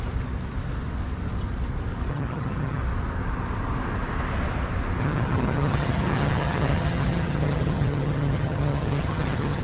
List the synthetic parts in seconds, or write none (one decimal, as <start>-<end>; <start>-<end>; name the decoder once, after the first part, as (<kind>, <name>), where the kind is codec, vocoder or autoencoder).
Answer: 2.1-2.8 (vocoder, HiFi-GAN); 5.0-9.6